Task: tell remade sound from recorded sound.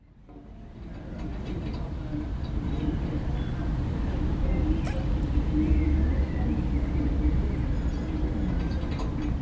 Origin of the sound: recorded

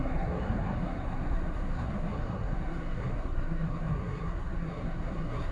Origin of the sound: remade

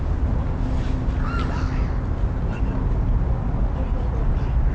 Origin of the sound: recorded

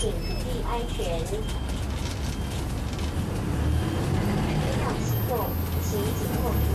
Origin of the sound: recorded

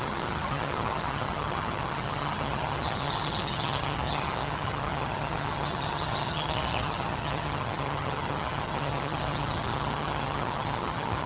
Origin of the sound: remade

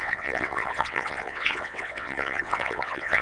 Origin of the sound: remade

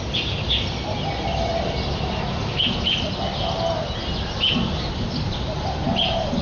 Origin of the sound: recorded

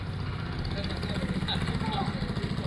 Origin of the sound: recorded